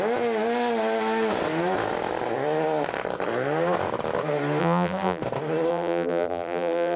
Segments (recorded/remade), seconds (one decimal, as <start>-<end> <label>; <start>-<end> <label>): 0.0-4.6 recorded; 4.6-5.2 remade; 5.2-5.7 recorded; 5.7-7.0 remade